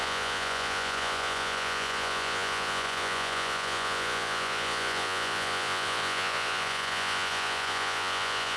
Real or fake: fake